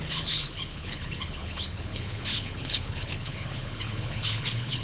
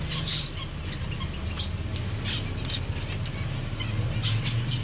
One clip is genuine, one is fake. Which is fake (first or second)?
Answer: first